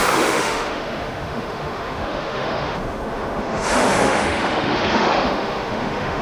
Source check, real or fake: fake